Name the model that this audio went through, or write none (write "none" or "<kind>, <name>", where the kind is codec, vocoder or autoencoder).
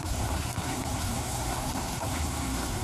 codec, SNAC